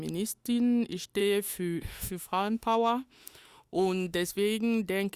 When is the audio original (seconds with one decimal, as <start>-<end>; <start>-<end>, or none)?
0.0-1.2; 4.3-5.2